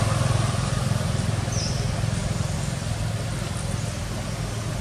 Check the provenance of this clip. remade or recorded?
recorded